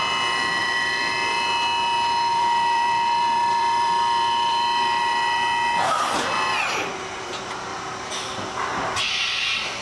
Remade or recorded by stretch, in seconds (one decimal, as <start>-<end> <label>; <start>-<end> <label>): 0.0-0.6 recorded; 0.6-1.1 remade; 1.1-2.3 recorded; 2.3-5.0 remade; 5.0-9.8 recorded